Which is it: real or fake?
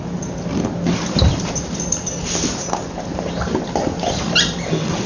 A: fake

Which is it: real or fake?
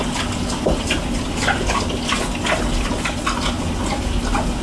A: real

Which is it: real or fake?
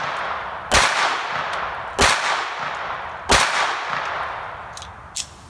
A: real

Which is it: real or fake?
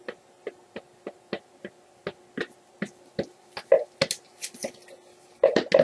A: real